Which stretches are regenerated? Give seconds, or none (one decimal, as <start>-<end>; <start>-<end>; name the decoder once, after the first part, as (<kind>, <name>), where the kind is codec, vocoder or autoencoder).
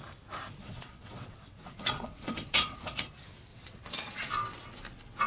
0.6-2.9 (vocoder, WaveNeXt); 3.5-4.3